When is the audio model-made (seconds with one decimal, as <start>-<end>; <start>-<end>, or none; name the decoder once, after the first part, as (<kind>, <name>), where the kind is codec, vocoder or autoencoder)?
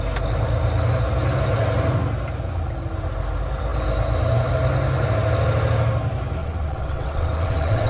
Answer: 6.4-7.9 (vocoder, WaveNeXt)